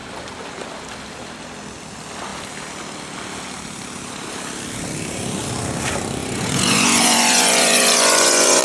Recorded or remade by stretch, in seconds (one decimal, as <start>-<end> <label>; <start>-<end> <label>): 0.0-6.2 recorded; 6.2-8.6 remade

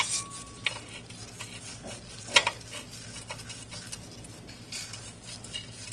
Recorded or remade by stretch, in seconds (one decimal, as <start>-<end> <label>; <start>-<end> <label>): 0.0-5.9 recorded

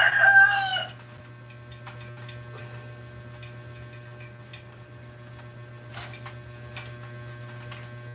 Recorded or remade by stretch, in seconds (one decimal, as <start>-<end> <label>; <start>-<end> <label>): 0.0-8.1 recorded

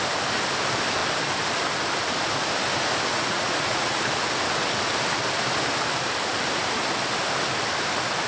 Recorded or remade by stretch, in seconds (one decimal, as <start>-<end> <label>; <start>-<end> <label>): 0.0-3.1 recorded; 3.1-4.0 remade; 4.0-8.3 recorded

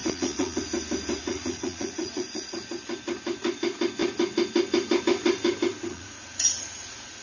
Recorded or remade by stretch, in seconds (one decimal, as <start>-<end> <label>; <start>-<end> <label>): 0.0-0.6 remade; 0.6-1.2 recorded; 1.2-2.6 remade; 2.6-5.9 recorded; 5.9-7.2 remade

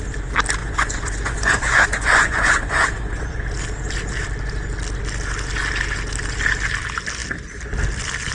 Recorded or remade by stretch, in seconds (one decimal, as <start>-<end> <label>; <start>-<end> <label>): 0.0-0.6 recorded; 0.6-3.4 remade; 3.4-8.3 recorded